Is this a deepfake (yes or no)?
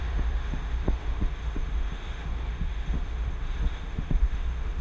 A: yes